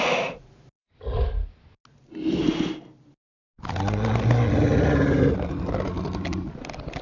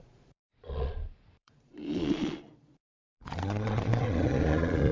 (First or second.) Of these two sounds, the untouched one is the first